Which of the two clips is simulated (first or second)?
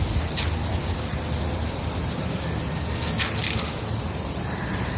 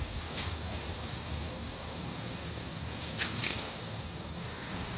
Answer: second